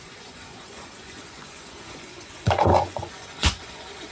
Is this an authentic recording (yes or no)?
no